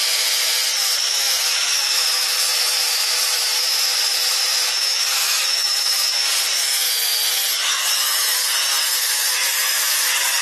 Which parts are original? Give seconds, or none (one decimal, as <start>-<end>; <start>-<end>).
0.0-1.0; 6.2-7.5; 8.4-9.0